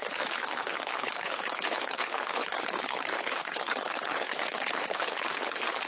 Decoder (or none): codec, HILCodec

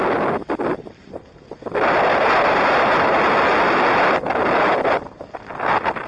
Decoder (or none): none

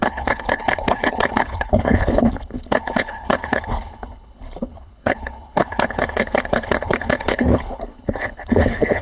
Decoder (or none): codec, HILCodec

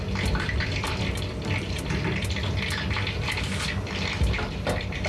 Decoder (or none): none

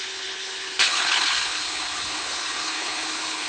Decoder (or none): codec, HILCodec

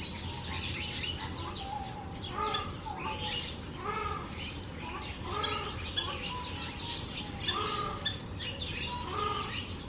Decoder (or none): none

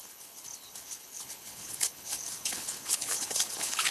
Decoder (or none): codec, HILCodec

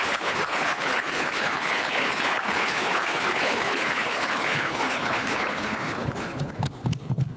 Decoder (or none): codec, HILCodec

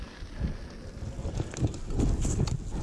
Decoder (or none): none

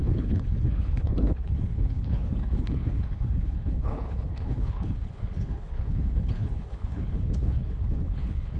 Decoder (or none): codec, HILCodec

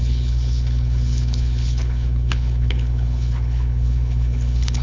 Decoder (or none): codec, HILCodec